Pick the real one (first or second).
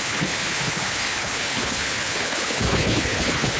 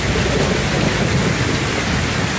second